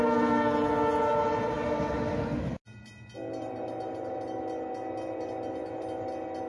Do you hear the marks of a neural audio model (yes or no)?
no